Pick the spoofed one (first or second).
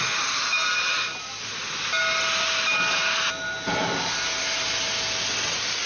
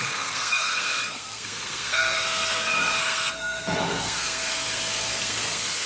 second